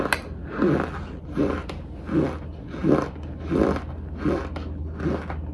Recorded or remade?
recorded